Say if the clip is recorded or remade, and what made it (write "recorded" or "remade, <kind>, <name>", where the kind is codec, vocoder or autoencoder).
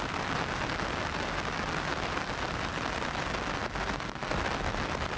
recorded